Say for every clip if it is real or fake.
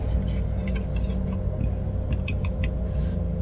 real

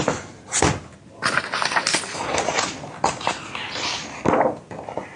real